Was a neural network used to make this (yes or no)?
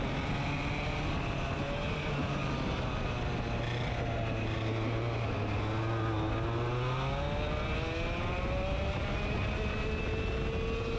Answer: no